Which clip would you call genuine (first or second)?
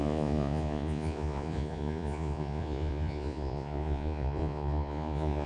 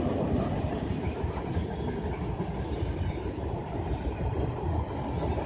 second